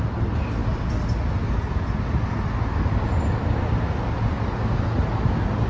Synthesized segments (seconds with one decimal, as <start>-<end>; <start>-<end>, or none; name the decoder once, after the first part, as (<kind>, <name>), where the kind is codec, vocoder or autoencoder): none